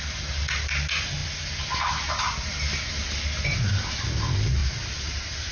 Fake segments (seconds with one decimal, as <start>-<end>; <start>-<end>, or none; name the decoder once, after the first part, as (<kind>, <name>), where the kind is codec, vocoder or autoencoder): none